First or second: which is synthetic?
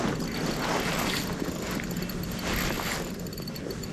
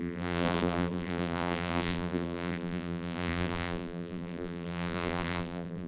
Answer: second